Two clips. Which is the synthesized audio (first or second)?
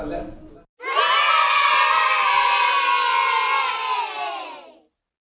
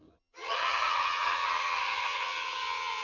second